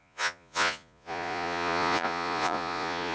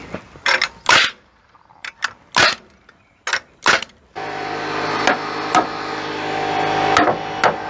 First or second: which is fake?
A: first